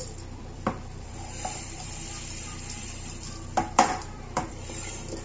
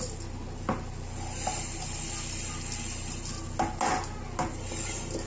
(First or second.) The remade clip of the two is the first